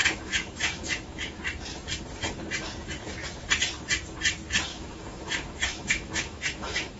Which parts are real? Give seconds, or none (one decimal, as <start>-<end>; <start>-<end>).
1.4-4.7